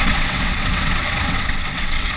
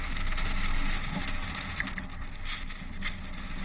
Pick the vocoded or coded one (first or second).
first